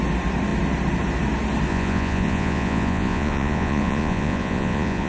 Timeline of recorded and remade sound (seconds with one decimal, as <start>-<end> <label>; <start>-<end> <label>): 0.0-1.7 recorded; 1.7-5.1 remade